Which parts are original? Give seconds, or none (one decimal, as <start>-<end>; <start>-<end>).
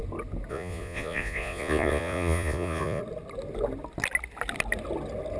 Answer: 0.0-0.5; 3.0-5.4